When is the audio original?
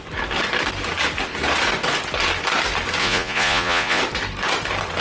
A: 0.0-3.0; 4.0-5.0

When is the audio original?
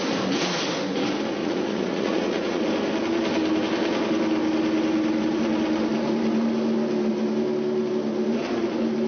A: 0.0-1.4; 2.6-9.1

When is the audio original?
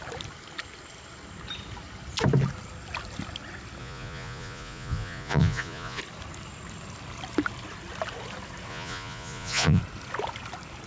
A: 0.0-3.8; 6.0-8.7; 9.8-10.9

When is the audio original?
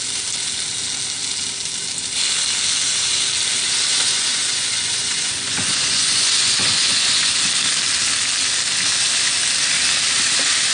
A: 0.0-3.9; 7.3-10.7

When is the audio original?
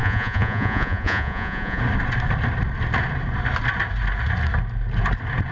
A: 1.8-5.5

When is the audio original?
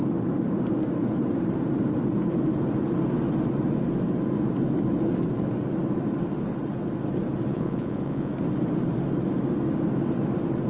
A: 0.0-7.5; 8.3-10.7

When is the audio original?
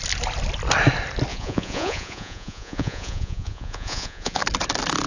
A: 0.0-1.3; 4.4-5.1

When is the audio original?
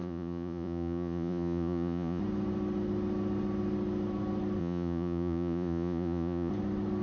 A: 2.2-4.6; 6.5-7.0